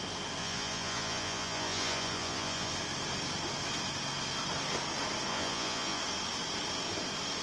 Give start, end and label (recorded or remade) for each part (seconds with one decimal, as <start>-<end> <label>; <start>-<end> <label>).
0.0-0.4 recorded; 0.4-2.7 remade; 2.7-5.3 recorded; 5.3-6.0 remade; 6.0-7.4 recorded